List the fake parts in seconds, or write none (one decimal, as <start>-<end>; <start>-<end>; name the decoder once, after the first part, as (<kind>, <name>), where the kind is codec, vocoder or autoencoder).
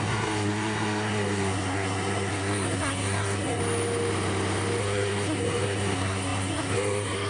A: 0.0-3.6 (codec, SNAC); 4.8-7.3